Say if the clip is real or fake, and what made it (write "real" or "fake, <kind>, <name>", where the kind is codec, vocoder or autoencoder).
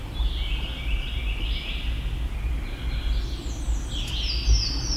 real